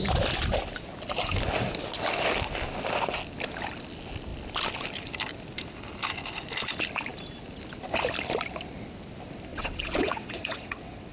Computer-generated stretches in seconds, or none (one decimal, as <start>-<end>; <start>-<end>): 9.5-11.1